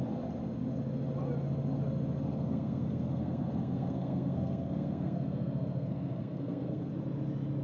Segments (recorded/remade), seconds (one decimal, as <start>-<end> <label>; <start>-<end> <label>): 0.0-2.3 recorded; 2.3-6.9 remade; 6.9-7.6 recorded